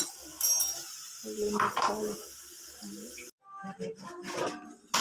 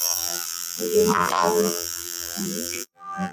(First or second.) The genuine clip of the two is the first